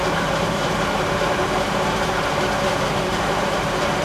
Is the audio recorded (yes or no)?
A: no